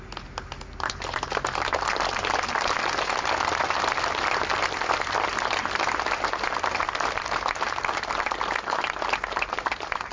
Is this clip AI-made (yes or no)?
yes